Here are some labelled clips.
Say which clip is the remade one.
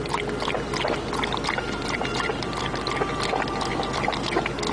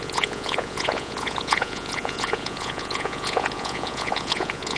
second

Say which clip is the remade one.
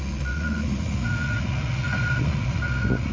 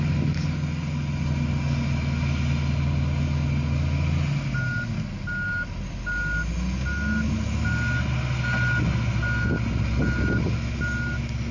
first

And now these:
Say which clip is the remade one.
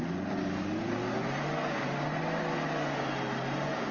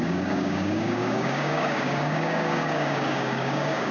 second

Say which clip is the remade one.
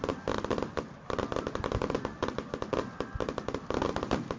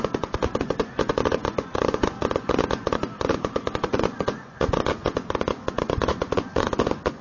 second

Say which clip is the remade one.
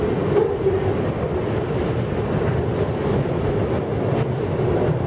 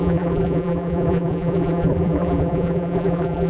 second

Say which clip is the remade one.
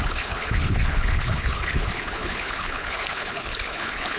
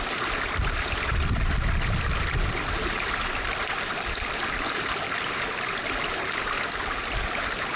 first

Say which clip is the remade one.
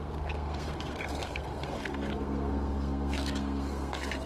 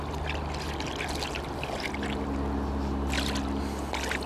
first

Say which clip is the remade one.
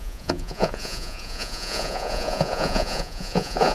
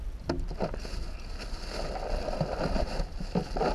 first